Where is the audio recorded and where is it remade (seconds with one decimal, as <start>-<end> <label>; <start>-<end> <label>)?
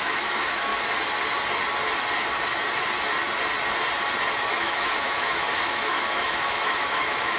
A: 0.0-0.7 remade; 0.7-4.6 recorded; 4.6-7.4 remade